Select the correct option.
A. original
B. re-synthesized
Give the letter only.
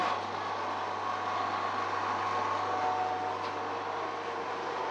A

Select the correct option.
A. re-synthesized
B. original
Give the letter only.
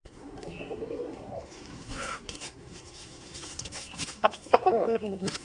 A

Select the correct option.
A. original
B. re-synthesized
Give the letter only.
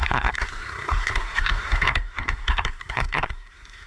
B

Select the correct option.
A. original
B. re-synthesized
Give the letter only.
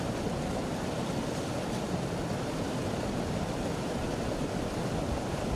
A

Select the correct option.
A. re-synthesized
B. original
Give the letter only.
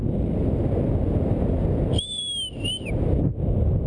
B